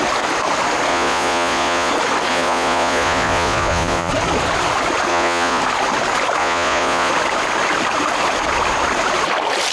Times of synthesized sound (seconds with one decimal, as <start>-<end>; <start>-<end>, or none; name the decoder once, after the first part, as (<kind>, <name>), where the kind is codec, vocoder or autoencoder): 0.9-1.9 (vocoder, Vocos); 2.3-4.1; 5.1-5.6; 6.4-7.1